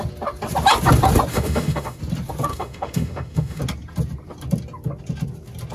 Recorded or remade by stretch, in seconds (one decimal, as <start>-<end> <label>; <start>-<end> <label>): 0.0-1.3 recorded; 1.3-2.0 remade; 2.0-2.5 recorded; 2.5-3.6 remade; 3.6-5.7 recorded